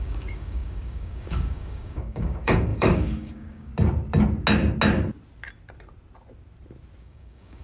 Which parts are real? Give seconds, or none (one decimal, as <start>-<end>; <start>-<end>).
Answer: 3.7-7.0